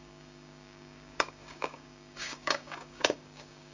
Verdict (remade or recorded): remade